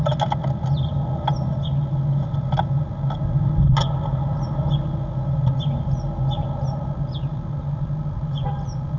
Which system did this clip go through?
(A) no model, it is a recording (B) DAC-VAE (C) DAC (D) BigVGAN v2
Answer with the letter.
A